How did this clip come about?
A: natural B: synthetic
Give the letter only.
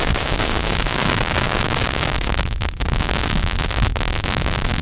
B